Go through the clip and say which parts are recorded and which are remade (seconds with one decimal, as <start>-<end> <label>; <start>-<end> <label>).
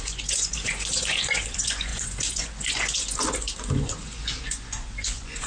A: 0.0-5.5 remade